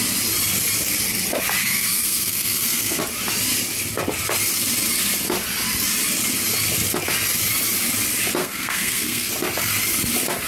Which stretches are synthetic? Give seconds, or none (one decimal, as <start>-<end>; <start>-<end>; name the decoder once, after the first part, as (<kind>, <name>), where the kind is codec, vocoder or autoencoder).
1.6-3.0 (codec, SNAC); 8.4-9.3